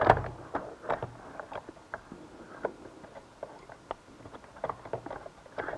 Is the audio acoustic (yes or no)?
yes